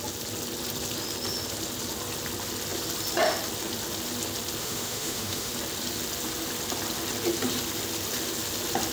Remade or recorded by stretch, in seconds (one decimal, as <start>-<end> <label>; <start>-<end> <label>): 0.0-4.6 recorded; 4.6-5.5 remade; 5.5-8.9 recorded